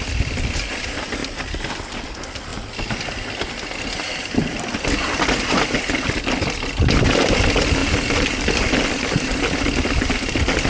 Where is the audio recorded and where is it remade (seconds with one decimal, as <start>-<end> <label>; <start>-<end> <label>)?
0.0-10.7 recorded